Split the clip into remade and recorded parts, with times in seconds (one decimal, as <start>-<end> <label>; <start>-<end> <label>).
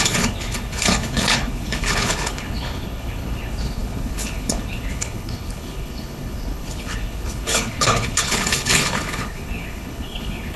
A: 0.0-10.6 remade